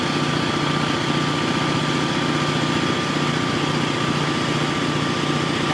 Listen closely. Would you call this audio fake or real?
real